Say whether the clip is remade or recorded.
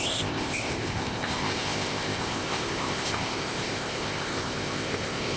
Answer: remade